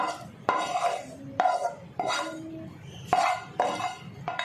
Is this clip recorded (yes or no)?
yes